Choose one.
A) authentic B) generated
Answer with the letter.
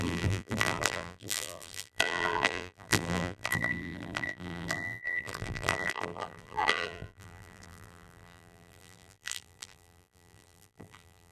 B